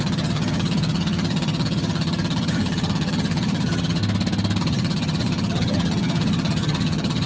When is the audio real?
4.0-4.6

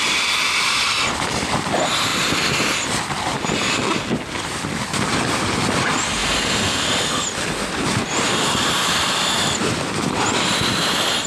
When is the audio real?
0.0-11.3

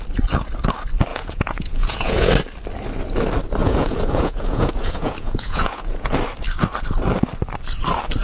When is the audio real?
0.0-1.1; 2.3-3.6; 6.1-8.2

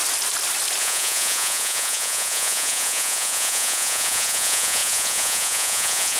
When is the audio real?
0.0-0.8